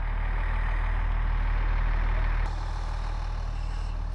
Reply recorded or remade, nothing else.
recorded